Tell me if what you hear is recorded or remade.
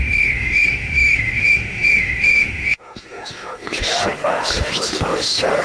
remade